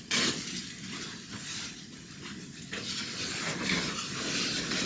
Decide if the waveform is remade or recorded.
recorded